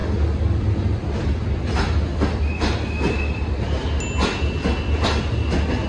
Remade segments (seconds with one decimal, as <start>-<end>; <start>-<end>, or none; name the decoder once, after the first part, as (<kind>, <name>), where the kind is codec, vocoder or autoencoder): none